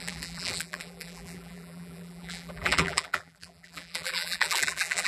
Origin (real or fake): fake